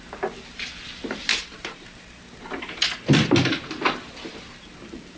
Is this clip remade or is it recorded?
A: recorded